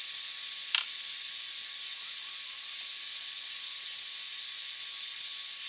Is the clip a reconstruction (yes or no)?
no